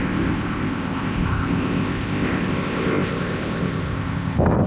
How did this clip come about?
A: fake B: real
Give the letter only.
A